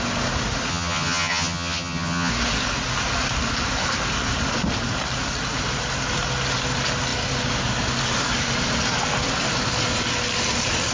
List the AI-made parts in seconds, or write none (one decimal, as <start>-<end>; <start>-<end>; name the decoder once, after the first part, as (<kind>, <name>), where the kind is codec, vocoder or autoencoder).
0.7-2.3 (vocoder, HiFi-GAN)